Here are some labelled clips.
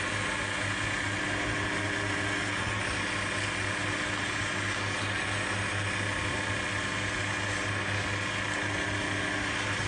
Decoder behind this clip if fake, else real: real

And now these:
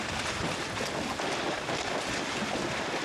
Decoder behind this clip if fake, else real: real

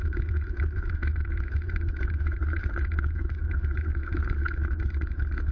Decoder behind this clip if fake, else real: fake, autoencoder, DAC-VAE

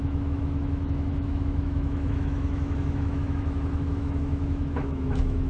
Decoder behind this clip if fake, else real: fake, autoencoder, DAC-VAE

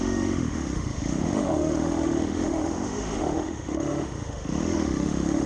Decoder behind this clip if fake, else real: fake, autoencoder, DAC-VAE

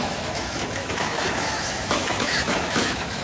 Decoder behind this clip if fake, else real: fake, autoencoder, DAC-VAE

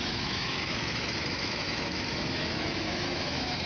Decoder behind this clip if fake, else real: fake, autoencoder, DAC-VAE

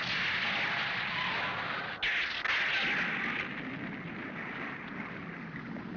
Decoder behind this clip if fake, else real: real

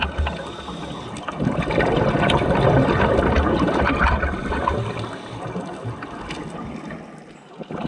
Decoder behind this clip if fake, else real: real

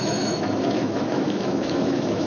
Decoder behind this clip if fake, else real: fake, autoencoder, DAC-VAE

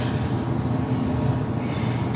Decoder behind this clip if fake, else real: real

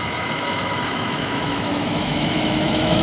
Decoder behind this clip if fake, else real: fake, autoencoder, DAC-VAE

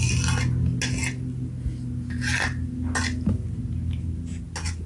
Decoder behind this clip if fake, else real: real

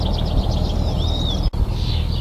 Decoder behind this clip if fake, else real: real